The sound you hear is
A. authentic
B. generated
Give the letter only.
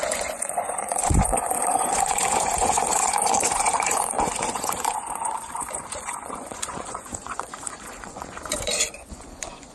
B